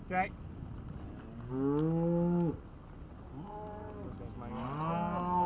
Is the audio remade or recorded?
recorded